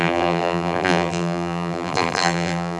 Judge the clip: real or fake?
fake